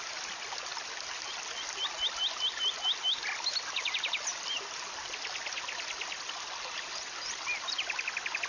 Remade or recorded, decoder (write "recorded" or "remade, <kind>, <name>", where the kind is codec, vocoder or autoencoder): recorded